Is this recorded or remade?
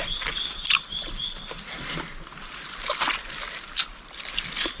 recorded